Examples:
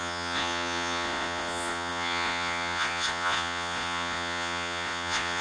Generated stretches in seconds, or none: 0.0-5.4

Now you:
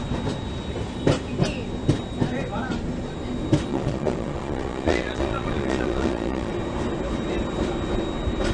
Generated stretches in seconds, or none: 3.7-6.5